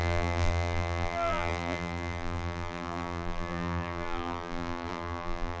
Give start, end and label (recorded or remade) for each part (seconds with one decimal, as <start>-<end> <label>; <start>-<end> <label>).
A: 0.0-5.6 remade